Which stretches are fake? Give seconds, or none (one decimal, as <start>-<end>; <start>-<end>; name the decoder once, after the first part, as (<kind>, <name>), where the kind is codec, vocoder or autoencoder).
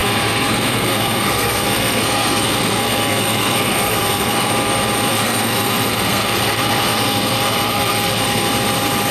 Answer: 0.0-4.5 (codec, SNAC); 5.1-8.5